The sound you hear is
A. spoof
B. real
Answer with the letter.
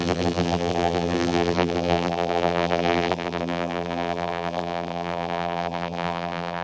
A